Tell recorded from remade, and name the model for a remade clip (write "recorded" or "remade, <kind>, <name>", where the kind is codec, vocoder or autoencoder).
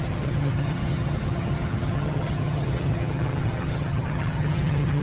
remade, vocoder, HiFi-GAN